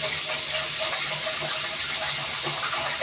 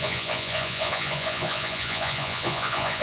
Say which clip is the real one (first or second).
first